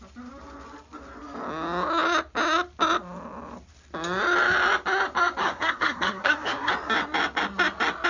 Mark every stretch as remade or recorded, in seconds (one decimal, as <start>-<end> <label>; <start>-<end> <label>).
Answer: 0.0-5.4 recorded; 5.4-6.7 remade; 6.7-8.1 recorded